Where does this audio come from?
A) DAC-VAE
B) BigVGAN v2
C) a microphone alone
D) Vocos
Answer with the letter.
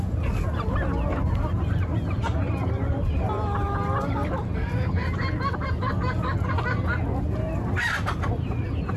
C